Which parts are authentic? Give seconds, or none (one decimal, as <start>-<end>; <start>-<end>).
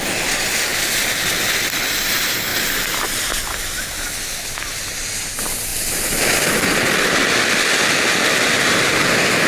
0.0-9.5